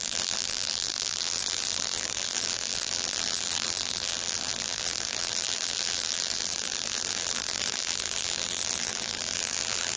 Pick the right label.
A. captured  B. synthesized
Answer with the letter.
B